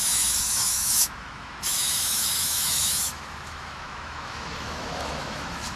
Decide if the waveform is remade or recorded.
remade